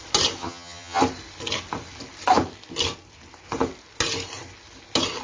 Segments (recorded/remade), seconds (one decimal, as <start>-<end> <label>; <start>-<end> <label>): 0.0-0.4 recorded; 0.4-1.0 remade; 1.0-5.2 recorded